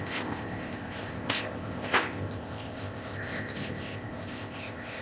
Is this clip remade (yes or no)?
yes